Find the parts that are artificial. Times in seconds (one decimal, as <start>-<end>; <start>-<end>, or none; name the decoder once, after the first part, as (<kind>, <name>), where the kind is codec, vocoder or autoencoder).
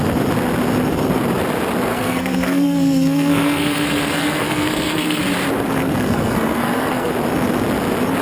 1.9-5.2 (codec, SNAC); 5.8-7.1